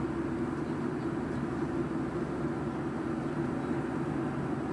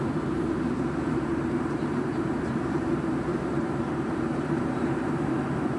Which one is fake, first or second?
second